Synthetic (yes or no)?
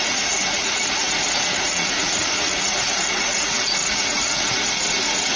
yes